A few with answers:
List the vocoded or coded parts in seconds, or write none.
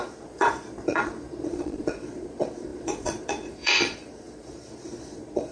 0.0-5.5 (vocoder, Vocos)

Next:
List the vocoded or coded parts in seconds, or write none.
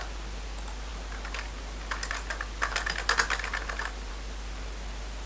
none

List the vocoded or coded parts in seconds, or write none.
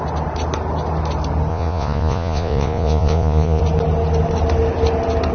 1.5-3.6 (vocoder, Vocos)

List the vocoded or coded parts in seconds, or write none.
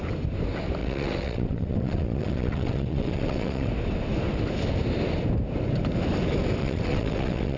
0.8-3.7 (vocoder, WaveNeXt); 6.6-7.6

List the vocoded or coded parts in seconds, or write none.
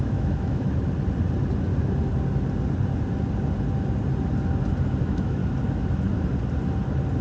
0.0-0.7 (autoencoder, DAC-VAE); 5.0-5.4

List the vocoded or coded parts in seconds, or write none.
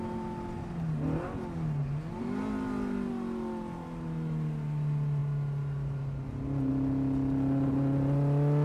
none